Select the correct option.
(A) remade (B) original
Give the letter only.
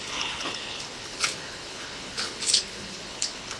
A